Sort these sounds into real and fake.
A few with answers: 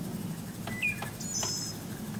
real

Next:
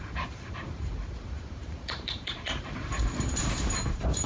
fake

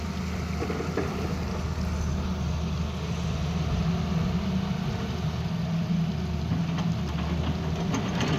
real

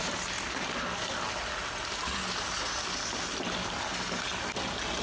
real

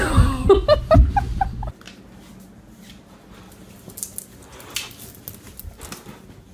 real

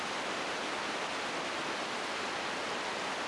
real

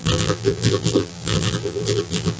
fake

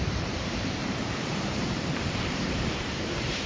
fake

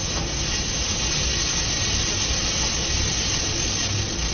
real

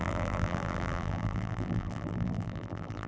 fake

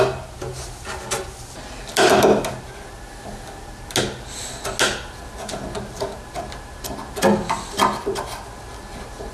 real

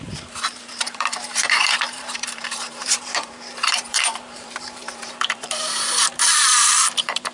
fake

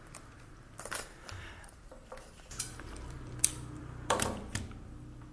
fake